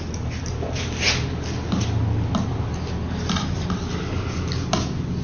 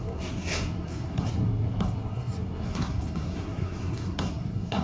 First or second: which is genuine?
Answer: first